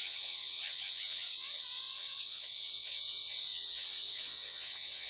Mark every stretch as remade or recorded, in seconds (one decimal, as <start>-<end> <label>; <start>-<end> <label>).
0.0-5.1 remade